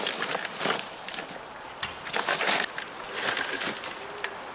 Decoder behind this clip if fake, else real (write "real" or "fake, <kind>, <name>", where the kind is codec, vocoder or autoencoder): real